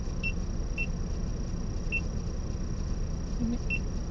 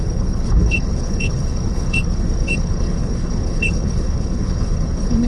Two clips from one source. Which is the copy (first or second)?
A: second